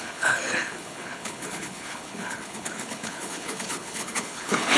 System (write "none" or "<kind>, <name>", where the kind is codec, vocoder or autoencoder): codec, HILCodec